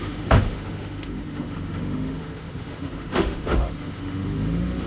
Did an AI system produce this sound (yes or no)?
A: yes